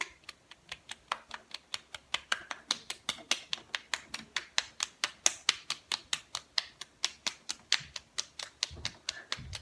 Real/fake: real